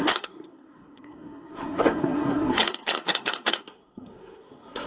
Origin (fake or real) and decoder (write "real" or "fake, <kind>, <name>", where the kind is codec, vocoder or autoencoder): fake, codec, SNAC